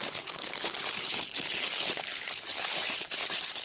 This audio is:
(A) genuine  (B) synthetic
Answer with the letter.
B